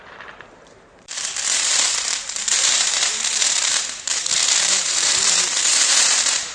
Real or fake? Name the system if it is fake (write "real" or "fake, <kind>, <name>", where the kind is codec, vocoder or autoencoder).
fake, vocoder, BigVGAN v2